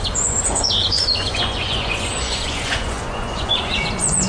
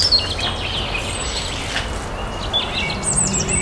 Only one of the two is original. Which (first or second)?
second